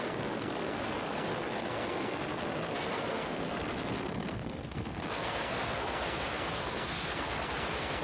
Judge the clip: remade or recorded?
remade